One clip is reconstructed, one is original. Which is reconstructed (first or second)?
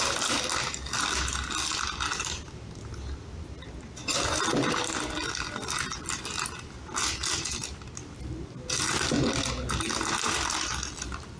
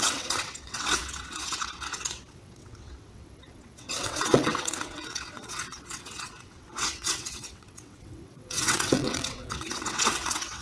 second